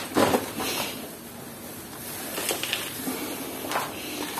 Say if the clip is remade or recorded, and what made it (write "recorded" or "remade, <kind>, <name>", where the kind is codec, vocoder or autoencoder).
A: recorded